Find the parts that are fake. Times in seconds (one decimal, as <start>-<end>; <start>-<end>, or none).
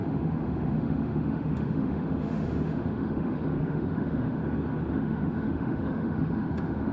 0.0-4.4; 4.9-6.9